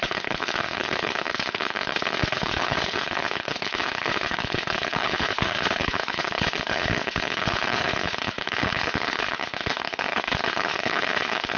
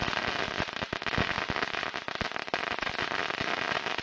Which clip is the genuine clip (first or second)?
second